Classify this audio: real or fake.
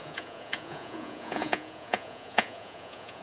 fake